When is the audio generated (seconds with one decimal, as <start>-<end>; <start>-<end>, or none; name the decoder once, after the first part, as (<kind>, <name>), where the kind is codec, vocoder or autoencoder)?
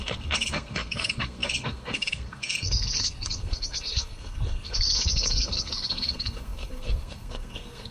0.0-7.9 (codec, SNAC)